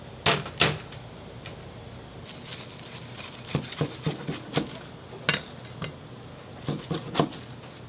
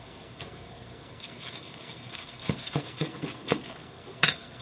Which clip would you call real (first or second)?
first